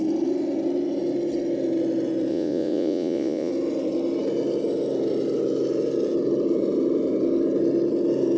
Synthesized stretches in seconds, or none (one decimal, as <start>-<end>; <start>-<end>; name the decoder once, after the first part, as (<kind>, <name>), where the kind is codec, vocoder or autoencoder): 2.3-3.5 (vocoder, Vocos)